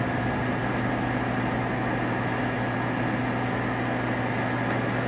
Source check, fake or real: real